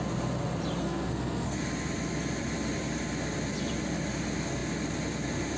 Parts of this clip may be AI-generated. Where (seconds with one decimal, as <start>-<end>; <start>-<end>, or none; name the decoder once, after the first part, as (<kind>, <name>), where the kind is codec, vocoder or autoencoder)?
0.8-1.6 (codec, SNAC)

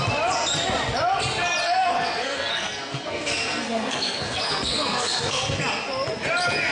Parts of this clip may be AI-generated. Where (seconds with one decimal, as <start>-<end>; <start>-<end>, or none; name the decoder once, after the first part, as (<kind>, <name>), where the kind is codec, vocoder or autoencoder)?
1.6-5.6 (codec, SNAC)

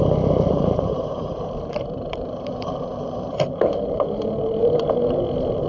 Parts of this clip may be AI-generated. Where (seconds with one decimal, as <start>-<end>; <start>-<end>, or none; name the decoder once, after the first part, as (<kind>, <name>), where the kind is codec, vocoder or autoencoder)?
0.5-3.6 (vocoder, BigVGAN v2); 4.6-5.2

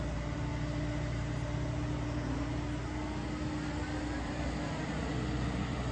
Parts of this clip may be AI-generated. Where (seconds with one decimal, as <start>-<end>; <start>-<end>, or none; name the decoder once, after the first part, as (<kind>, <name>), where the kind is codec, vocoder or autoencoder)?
0.0-0.5 (vocoder, BigVGAN v2); 4.0-5.9